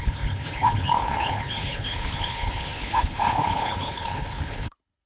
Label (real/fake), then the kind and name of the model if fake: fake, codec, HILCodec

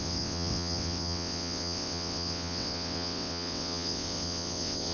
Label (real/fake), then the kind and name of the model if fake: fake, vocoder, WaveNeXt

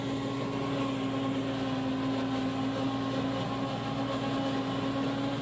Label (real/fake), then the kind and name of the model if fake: real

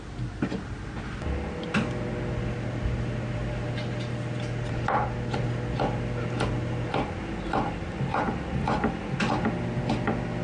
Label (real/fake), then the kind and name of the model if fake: real